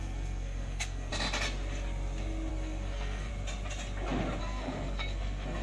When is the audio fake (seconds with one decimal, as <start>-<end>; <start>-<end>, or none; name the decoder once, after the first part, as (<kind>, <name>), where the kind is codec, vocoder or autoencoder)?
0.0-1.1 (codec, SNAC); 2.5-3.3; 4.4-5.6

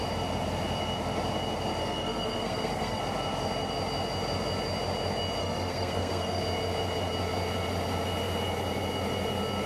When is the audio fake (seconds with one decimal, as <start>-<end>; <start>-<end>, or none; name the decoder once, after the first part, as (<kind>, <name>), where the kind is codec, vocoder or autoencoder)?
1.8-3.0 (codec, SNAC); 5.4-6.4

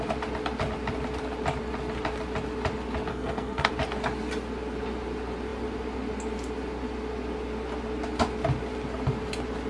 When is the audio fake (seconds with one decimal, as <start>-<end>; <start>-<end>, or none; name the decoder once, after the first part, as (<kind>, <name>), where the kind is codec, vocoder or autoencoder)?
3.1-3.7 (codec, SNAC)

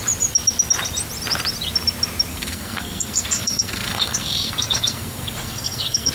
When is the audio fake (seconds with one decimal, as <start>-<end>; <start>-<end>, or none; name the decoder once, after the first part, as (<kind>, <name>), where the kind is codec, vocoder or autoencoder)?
2.3-6.1 (codec, SNAC)

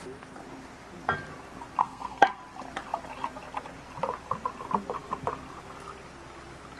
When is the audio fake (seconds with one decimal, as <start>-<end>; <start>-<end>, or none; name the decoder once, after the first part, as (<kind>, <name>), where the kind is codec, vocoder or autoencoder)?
1.8-2.4 (codec, SNAC)

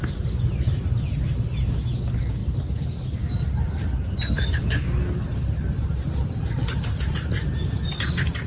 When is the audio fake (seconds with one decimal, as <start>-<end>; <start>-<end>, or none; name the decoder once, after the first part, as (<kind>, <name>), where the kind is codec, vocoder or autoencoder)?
none

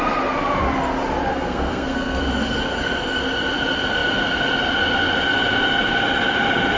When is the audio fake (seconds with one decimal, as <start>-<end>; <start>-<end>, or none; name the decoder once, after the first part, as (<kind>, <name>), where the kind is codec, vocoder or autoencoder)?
1.3-2.2 (codec, SNAC)